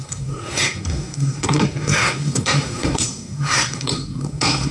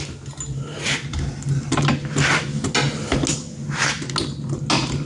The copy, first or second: first